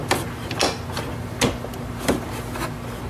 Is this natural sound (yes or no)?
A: yes